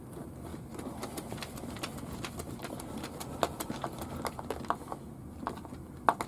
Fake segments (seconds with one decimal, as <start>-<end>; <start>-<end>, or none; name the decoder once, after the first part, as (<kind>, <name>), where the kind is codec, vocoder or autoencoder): none